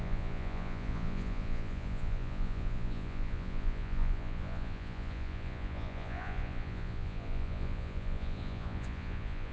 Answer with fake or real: fake